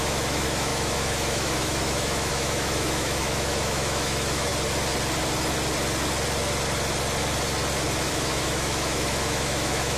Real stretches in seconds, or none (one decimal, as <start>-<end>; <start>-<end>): 4.5-8.1